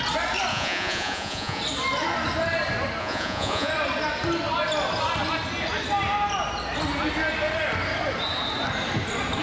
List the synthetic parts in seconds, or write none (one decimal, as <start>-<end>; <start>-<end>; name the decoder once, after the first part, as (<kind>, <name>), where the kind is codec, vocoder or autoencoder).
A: 0.5-1.6 (vocoder, Vocos); 3.0-3.7